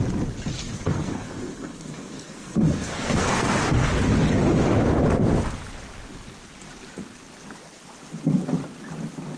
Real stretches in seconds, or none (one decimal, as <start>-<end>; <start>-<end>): 0.0-0.6; 3.6-9.4